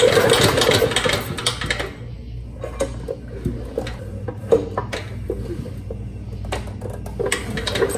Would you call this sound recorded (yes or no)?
yes